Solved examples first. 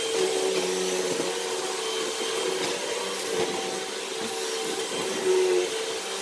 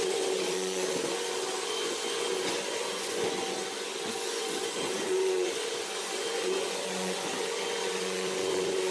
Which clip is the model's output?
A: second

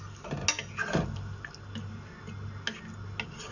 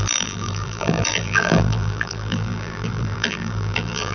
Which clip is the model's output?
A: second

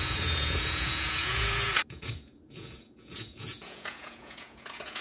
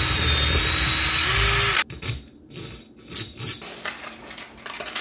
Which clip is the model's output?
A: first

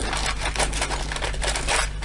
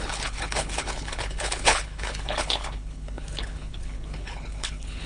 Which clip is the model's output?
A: second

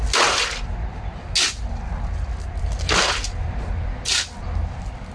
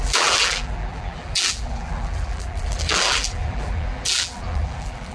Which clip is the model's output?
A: second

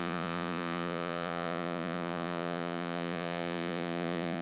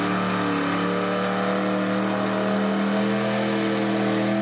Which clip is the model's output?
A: first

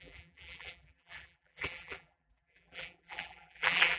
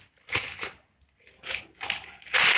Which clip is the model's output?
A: first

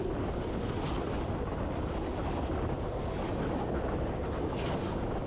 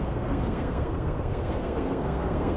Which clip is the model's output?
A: second